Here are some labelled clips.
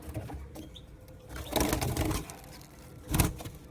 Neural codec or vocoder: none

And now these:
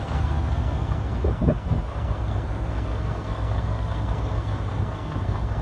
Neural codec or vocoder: codec, SNAC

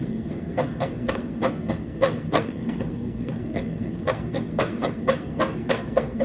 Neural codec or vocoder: codec, SNAC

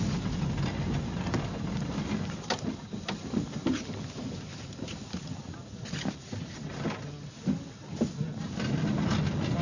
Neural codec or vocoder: none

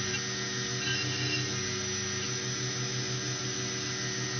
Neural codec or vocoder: none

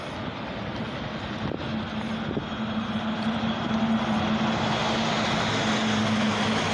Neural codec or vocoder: none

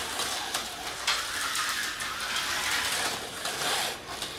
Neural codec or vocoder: none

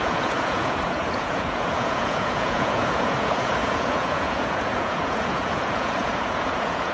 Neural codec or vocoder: vocoder, Vocos